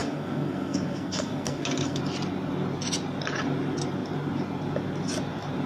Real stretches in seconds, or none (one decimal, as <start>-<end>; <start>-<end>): 2.0-5.7